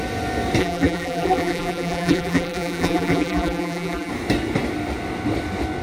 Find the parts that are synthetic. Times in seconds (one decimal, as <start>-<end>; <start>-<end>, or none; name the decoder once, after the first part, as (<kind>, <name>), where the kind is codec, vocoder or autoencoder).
0.6-4.1 (vocoder, BigVGAN v2)